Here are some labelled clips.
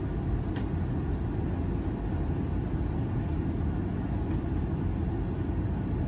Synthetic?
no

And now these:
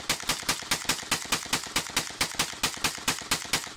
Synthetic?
no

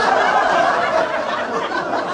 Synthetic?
no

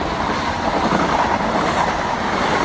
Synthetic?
no